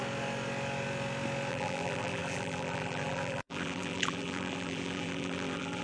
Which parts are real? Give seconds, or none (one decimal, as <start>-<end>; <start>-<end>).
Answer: 0.0-1.5